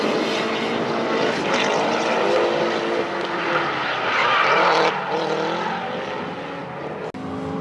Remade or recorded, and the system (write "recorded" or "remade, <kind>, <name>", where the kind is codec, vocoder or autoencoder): recorded